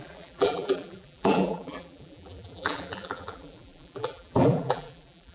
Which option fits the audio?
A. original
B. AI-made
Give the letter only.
B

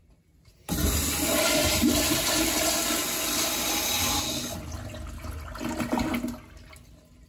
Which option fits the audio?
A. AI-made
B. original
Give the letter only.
B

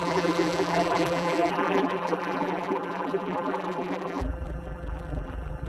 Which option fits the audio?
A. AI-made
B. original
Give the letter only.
A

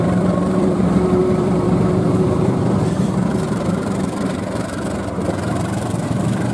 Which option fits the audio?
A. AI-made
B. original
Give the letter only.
A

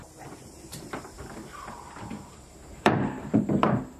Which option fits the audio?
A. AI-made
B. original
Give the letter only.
A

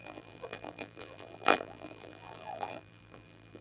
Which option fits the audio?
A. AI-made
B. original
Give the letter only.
A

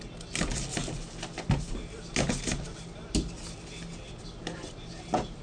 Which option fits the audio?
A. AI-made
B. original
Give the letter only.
B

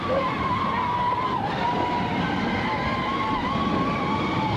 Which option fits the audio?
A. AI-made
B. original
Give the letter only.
B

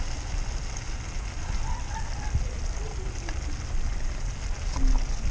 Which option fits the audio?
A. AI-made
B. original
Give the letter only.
B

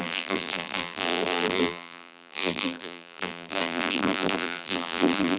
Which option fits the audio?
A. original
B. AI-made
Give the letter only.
B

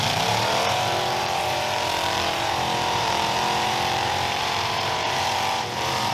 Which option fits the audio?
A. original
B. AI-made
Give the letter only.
B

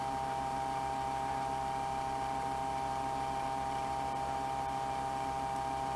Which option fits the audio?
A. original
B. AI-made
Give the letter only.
A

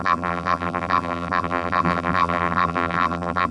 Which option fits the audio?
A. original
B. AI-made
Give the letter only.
B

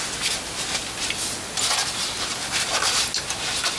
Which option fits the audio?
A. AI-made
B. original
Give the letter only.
B